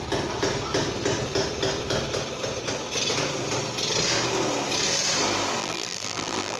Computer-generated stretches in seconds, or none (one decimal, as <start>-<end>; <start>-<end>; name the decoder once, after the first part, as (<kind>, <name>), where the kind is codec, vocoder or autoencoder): 5.6-6.6 (vocoder, BigVGAN v2)